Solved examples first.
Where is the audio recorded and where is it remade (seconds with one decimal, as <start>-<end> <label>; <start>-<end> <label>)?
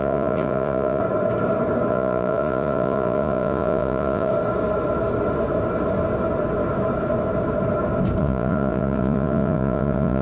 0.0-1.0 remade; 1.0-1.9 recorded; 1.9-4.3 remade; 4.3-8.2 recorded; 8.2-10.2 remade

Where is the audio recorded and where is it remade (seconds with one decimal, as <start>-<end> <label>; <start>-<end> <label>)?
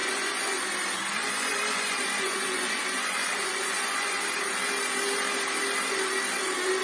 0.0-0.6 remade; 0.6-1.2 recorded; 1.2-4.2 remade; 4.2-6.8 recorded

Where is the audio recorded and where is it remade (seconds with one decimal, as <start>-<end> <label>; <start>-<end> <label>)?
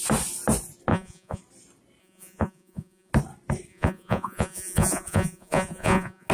0.0-0.9 recorded; 0.9-1.4 remade; 1.4-2.0 recorded; 2.0-3.1 remade; 3.1-3.7 recorded; 3.7-6.3 remade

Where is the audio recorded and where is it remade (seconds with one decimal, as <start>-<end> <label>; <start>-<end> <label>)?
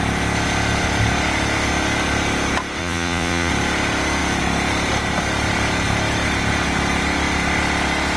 0.0-2.8 recorded; 2.8-3.5 remade; 3.5-8.2 recorded